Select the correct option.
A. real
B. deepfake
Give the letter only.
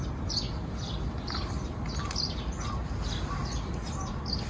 A